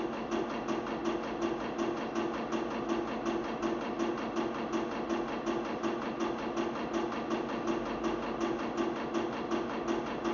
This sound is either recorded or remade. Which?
recorded